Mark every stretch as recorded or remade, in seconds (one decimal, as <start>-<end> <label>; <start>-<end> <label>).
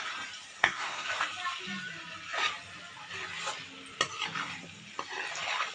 0.0-0.6 recorded; 0.6-1.1 remade; 1.1-5.7 recorded